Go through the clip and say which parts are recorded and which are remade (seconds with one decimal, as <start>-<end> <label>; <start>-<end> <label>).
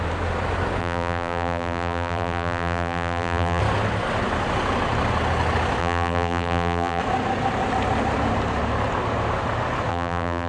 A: 0.0-0.8 recorded; 0.8-3.6 remade; 3.6-5.8 recorded; 5.8-7.0 remade; 7.0-9.9 recorded; 9.9-10.5 remade